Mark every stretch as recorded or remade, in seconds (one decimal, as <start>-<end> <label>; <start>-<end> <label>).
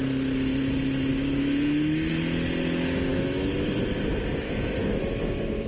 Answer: 0.0-1.1 recorded; 1.1-2.1 remade; 2.1-3.1 recorded; 3.1-5.7 remade